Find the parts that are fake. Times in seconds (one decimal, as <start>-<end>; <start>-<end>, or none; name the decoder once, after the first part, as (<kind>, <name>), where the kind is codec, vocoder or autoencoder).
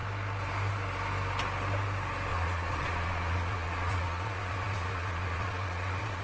2.3-6.2 (vocoder, Vocos)